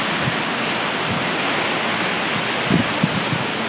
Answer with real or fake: real